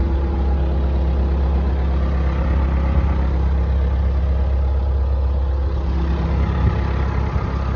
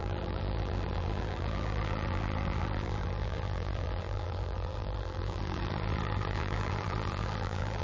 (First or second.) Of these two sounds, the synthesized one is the second